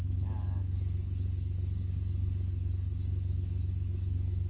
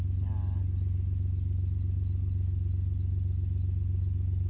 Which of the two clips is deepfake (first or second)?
first